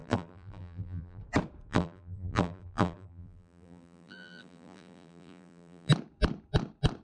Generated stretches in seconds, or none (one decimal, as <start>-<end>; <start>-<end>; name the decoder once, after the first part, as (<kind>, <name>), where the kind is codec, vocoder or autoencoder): 0.0-1.2 (vocoder, BigVGAN v2); 1.7-5.9